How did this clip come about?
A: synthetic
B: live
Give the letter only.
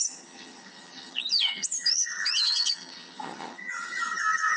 A